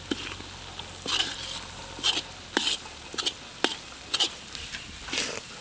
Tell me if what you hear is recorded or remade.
recorded